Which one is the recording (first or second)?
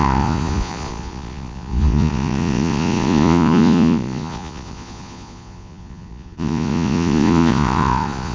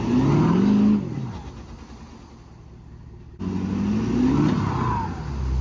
second